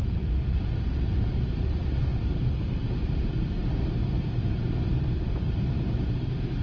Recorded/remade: remade